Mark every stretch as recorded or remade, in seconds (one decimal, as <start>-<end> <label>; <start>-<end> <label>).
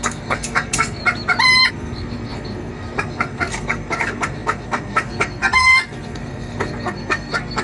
0.0-1.0 remade; 1.0-1.7 recorded; 1.7-7.6 remade